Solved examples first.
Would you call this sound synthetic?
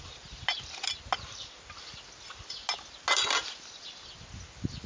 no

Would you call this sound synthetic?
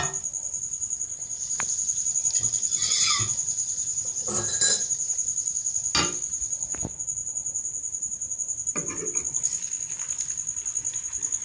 no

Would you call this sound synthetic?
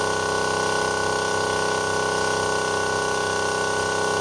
no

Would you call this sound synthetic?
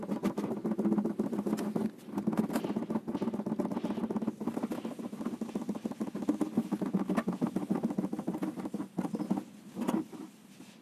no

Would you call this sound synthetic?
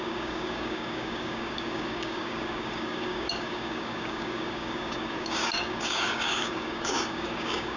yes